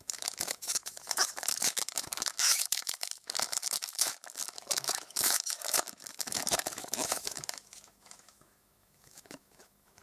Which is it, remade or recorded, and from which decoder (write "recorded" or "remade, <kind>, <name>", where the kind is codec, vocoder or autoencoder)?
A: remade, autoencoder, DAC-VAE